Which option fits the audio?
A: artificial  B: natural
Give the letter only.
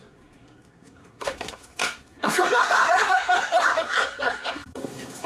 A